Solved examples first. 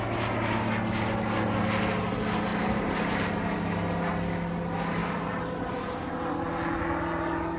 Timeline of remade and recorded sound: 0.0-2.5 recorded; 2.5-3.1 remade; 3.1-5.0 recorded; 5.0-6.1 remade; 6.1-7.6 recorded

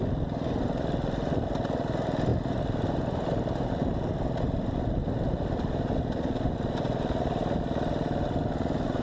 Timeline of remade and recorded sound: 0.0-9.0 recorded

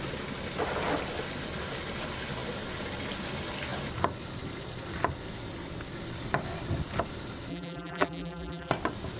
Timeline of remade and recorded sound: 0.0-7.5 recorded; 7.5-8.7 remade; 8.7-9.2 recorded

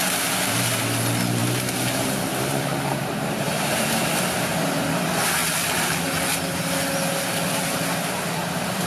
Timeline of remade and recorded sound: 0.0-1.4 recorded; 1.4-3.7 remade; 3.7-8.9 recorded

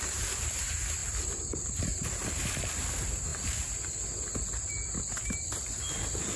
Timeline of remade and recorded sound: 0.0-1.0 recorded; 1.0-1.8 remade; 1.8-2.2 recorded; 2.2-2.8 remade; 2.8-6.4 recorded

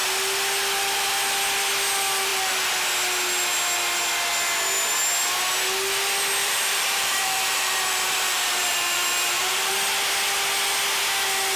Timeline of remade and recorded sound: 0.0-6.4 recorded; 6.4-9.7 remade; 9.7-11.6 recorded

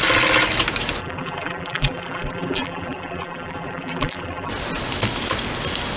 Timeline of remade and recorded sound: 0.0-1.0 recorded; 1.0-4.5 remade; 4.5-6.0 recorded